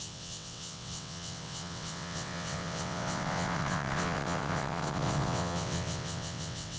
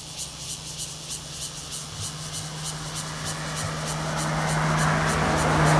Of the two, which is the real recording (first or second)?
second